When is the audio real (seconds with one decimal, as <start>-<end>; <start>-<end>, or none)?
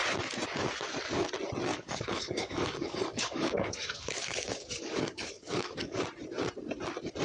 0.0-1.7; 6.0-7.2